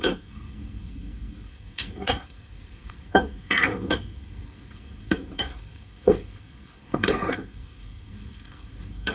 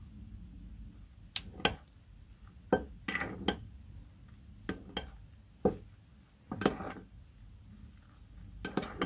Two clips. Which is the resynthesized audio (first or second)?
first